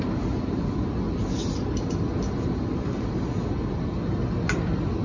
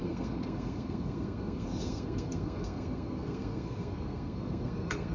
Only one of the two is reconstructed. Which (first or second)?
second